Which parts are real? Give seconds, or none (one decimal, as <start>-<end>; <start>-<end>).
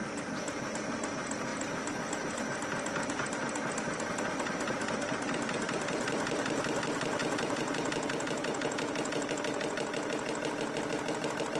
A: 0.0-7.2; 9.3-11.6